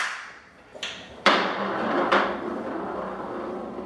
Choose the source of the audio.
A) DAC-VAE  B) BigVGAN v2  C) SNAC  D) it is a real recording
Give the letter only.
B